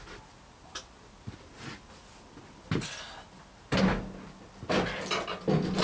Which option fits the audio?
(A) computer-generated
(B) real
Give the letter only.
B